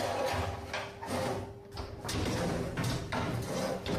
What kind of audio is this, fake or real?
real